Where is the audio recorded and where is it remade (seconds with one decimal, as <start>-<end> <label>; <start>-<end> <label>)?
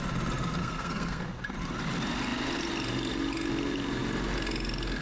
0.0-0.6 recorded; 0.6-1.2 remade; 1.2-5.0 recorded